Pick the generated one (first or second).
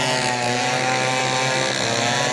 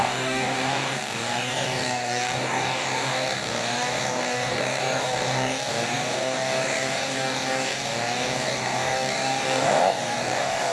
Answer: second